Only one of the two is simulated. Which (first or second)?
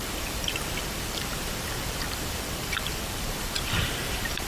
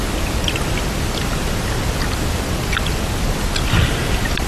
first